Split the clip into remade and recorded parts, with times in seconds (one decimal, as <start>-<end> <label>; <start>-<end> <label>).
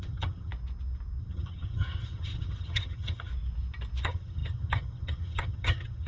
0.0-0.5 remade; 0.5-1.2 recorded; 1.2-3.3 remade; 3.3-4.0 recorded; 4.0-6.1 remade